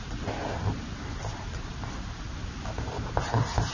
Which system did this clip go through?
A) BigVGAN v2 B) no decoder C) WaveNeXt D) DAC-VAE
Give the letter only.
B